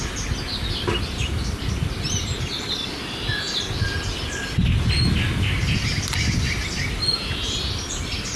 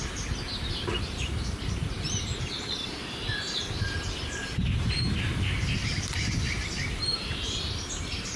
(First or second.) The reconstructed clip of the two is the second